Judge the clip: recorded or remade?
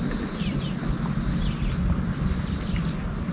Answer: recorded